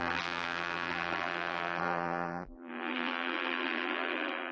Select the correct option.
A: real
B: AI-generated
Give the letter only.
B